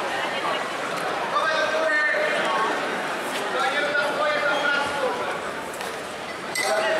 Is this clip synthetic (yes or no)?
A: yes